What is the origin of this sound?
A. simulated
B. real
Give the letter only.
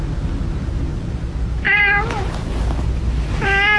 B